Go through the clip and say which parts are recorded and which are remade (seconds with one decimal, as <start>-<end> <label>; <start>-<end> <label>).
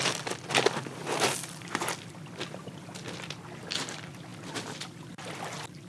0.0-5.9 recorded